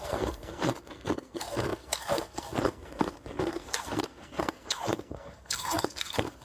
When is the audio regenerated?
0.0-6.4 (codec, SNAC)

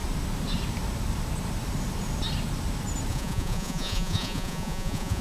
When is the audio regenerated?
3.1-5.2 (vocoder, Vocos)

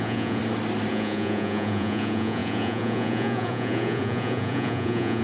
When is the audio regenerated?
0.0-0.4 (vocoder, Vocos); 0.9-5.2

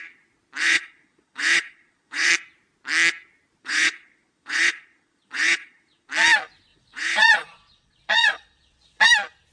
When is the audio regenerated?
0.6-2.3 (vocoder, Vocos); 3.6-6.1; 6.7-9.1

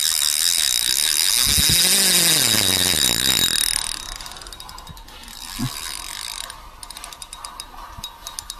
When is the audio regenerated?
none

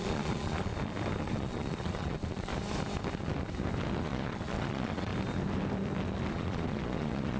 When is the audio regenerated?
0.0-0.7 (vocoder, Vocos); 1.2-2.5; 4.0-5.1; 6.3-7.4